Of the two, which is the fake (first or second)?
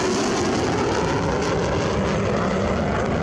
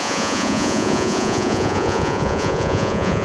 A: second